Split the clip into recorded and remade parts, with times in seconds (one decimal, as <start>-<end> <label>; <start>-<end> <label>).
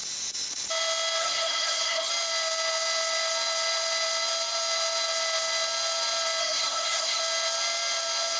0.0-1.2 recorded; 1.2-2.1 remade; 2.1-6.4 recorded; 6.4-7.2 remade; 7.2-8.4 recorded